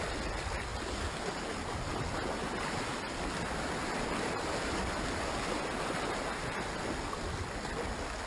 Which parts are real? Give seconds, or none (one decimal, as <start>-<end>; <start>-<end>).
0.0-8.3